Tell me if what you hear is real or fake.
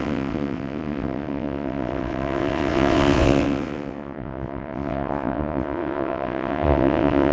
fake